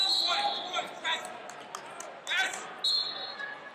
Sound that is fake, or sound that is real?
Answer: real